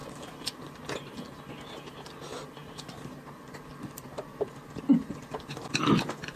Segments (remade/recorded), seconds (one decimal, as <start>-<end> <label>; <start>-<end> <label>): 0.0-0.8 remade; 0.8-2.6 recorded; 2.6-5.5 remade; 5.5-6.4 recorded